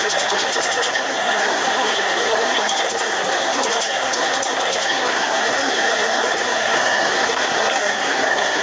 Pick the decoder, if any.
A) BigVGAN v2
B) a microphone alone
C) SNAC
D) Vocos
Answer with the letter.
C